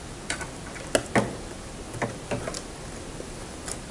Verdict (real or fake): real